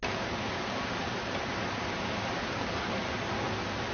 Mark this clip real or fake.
real